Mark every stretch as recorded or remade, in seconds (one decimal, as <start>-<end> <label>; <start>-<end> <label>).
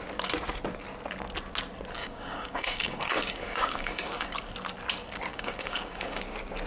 0.0-2.0 recorded; 2.0-4.3 remade; 4.3-5.3 recorded; 5.3-6.2 remade; 6.2-6.7 recorded